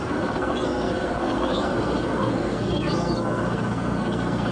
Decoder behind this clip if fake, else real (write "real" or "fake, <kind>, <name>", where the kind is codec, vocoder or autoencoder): fake, codec, SNAC